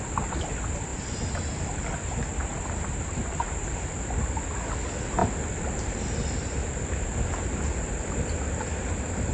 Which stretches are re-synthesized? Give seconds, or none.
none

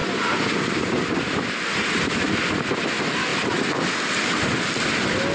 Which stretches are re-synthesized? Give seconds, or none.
none